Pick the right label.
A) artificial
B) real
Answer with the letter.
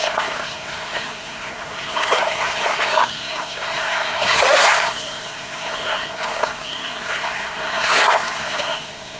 A